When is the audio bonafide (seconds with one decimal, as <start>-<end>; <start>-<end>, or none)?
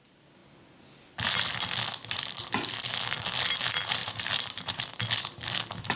0.0-4.0; 4.8-6.0